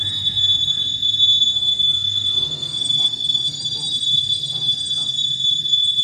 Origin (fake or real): fake